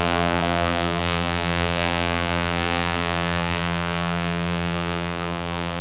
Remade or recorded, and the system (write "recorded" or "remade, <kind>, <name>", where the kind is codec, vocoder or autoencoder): remade, vocoder, BigVGAN v2